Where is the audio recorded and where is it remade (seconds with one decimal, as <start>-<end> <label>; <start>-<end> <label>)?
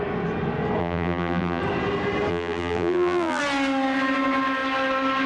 0.0-0.8 recorded; 0.8-1.6 remade; 1.6-2.3 recorded; 2.3-3.4 remade; 3.4-5.3 recorded